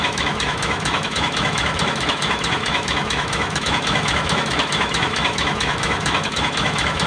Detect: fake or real fake